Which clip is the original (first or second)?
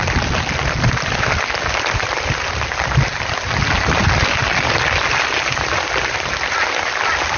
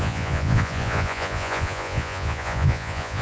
first